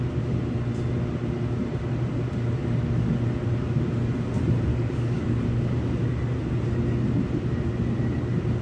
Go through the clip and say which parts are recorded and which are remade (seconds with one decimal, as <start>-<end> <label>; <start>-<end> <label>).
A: 0.0-4.7 recorded; 4.7-5.4 remade; 5.4-8.6 recorded

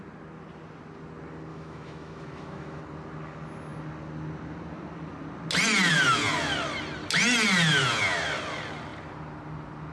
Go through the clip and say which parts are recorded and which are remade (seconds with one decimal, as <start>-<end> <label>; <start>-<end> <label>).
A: 0.0-1.5 recorded; 1.5-2.8 remade; 2.8-9.9 recorded

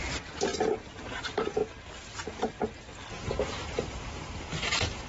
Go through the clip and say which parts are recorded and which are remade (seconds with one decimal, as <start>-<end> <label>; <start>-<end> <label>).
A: 0.0-0.5 remade; 0.5-1.2 recorded; 1.2-1.6 remade; 1.6-3.3 recorded; 3.3-5.1 remade

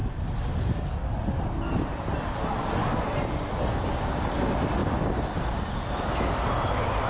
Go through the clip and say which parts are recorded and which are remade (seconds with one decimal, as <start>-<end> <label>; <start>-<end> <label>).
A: 0.0-7.1 recorded

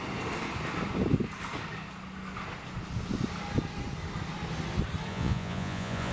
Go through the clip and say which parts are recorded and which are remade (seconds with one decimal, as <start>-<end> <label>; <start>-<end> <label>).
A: 0.0-5.1 recorded; 5.1-6.1 remade

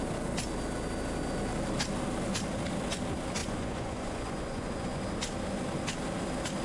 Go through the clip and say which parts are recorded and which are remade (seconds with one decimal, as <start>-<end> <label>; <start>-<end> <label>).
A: 0.0-3.4 recorded; 3.4-5.0 remade; 5.0-6.6 recorded

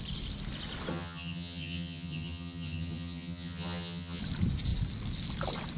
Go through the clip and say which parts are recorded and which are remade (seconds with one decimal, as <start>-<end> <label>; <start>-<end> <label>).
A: 0.0-0.9 recorded; 0.9-4.2 remade; 4.2-5.8 recorded

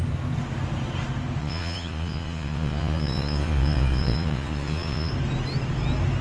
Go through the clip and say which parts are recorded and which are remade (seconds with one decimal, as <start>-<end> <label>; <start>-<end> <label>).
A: 0.0-1.4 recorded; 1.4-5.1 remade; 5.1-6.2 recorded